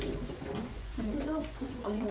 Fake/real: fake